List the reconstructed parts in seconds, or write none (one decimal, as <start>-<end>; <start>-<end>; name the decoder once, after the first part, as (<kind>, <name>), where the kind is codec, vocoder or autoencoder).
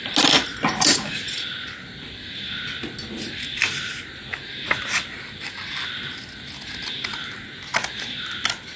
none